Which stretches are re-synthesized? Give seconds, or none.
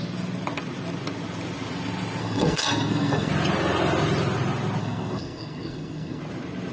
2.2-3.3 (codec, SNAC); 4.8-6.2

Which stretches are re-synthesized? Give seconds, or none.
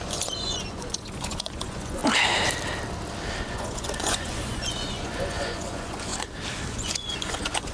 0.0-2.0 (vocoder, Vocos); 3.4-6.1; 6.7-7.7